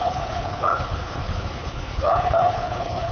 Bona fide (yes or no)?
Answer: no